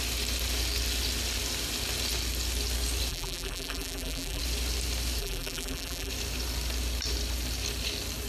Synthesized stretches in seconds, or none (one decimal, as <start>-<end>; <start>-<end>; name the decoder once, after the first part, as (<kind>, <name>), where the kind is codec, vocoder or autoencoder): 3.1-4.4 (vocoder, BigVGAN v2); 5.2-6.1